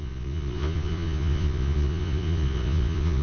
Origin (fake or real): fake